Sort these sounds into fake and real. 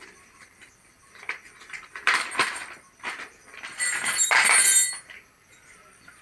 real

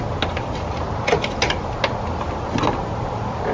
real